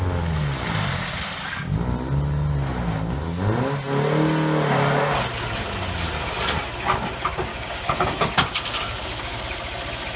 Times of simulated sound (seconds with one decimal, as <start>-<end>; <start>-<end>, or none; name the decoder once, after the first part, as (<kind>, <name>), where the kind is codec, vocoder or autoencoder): 7.5-9.4 (codec, DAC)